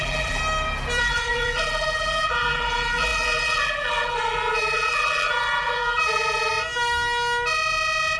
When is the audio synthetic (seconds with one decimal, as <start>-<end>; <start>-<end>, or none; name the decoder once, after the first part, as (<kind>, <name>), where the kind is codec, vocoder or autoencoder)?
0.0-0.4 (vocoder, BigVGAN v2); 1.0-6.5